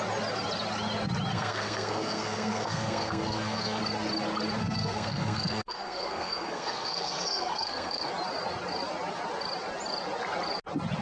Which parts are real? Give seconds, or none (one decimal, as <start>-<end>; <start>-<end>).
0.0-1.3; 3.8-4.6; 8.1-11.0